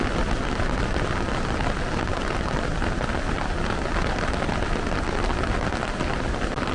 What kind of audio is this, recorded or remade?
recorded